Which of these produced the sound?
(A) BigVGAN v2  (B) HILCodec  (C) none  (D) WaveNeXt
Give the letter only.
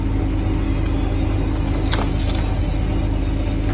C